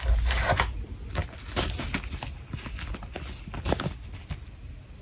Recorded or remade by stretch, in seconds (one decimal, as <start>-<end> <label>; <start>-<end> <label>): 0.0-5.0 recorded